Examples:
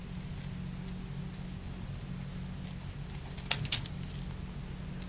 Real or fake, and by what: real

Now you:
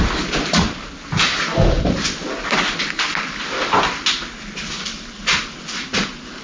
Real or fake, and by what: real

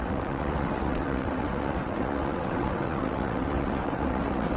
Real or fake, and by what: fake, vocoder, WaveNeXt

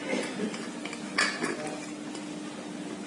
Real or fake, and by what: real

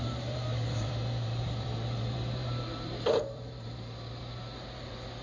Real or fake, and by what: fake, vocoder, BigVGAN v2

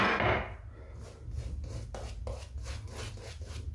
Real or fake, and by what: real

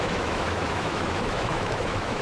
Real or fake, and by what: fake, autoencoder, DAC-VAE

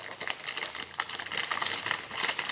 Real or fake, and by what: real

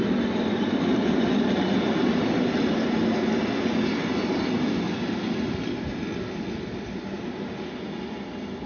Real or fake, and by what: real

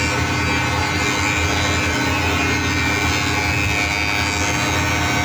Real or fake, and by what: real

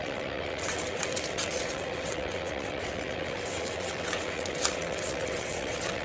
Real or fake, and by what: fake, vocoder, WaveNeXt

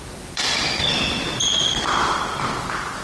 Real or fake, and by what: real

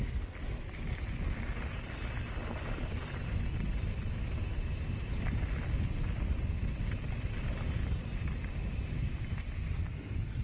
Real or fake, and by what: real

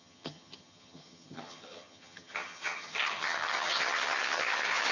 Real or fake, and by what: fake, vocoder, HiFi-GAN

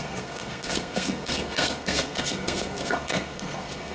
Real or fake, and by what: fake, codec, SNAC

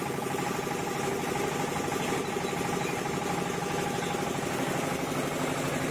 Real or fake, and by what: real